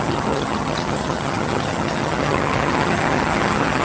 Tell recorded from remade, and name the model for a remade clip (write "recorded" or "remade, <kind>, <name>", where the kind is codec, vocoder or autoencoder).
remade, vocoder, HiFi-GAN